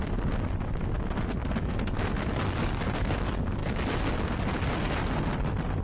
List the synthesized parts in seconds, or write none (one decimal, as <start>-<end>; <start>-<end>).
none